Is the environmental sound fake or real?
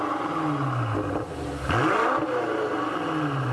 real